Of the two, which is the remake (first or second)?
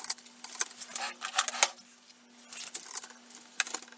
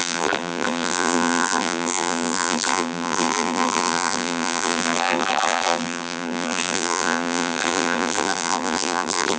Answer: second